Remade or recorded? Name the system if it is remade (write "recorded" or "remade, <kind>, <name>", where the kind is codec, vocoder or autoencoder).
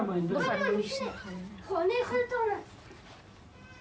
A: remade, vocoder, BigVGAN v2